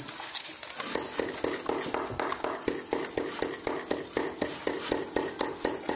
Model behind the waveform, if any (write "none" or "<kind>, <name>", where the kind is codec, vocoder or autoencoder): none